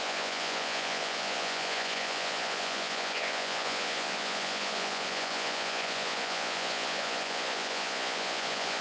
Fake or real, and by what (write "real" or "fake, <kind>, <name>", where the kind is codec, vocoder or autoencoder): fake, vocoder, Vocos